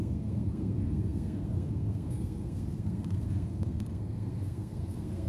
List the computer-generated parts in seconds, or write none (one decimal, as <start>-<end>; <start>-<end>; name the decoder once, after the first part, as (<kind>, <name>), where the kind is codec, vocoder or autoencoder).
0.0-5.3 (codec, SNAC)